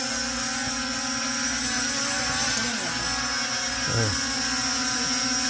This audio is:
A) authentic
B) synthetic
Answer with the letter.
A